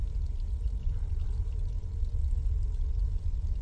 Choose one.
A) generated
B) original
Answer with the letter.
B